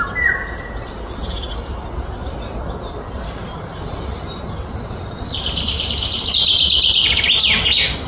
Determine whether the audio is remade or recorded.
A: recorded